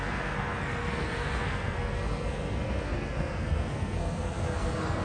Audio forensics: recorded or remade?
remade